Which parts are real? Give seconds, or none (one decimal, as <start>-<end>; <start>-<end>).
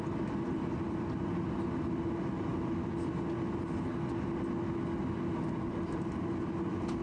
0.0-7.0